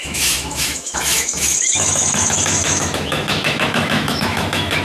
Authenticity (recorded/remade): remade